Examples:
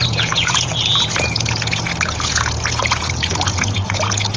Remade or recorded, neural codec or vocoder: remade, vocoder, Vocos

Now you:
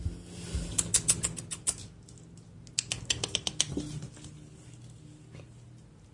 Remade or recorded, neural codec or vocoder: recorded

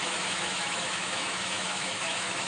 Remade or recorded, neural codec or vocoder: remade, autoencoder, DAC-VAE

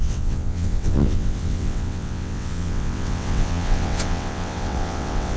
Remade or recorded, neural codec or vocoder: remade, vocoder, WaveNeXt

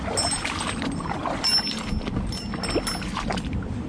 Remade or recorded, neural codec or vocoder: recorded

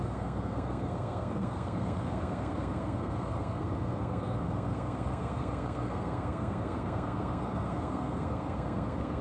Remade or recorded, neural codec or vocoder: remade, codec, SNAC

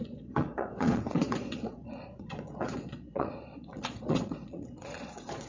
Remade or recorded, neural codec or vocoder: remade, vocoder, Vocos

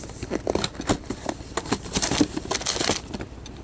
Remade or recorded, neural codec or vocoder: recorded